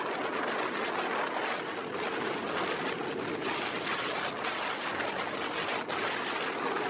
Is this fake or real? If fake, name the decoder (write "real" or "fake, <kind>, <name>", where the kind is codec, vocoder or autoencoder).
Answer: real